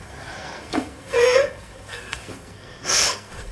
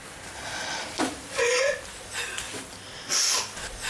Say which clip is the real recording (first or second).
second